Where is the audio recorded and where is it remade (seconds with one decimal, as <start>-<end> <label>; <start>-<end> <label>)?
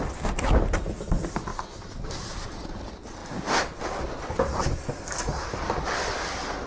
0.0-1.5 remade; 1.5-2.2 recorded; 2.2-3.2 remade; 3.2-4.3 recorded; 4.3-6.7 remade